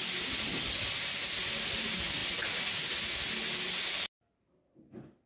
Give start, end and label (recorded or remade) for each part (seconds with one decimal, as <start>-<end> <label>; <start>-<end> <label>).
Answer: 0.0-5.3 recorded